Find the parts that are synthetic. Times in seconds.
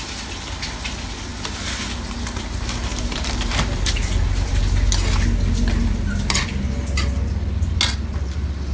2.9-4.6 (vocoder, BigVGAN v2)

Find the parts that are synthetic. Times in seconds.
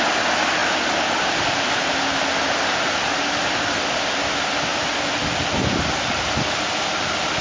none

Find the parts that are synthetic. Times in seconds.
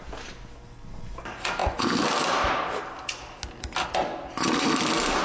none